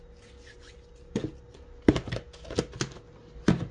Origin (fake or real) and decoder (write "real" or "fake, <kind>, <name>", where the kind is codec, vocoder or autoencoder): real